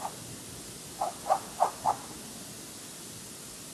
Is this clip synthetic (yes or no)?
no